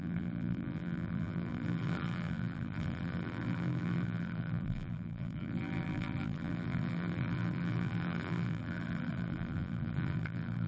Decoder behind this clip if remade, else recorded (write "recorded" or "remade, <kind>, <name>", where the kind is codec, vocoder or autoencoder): remade, vocoder, BigVGAN v2